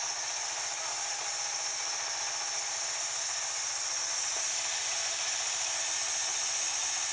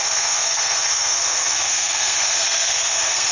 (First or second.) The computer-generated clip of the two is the second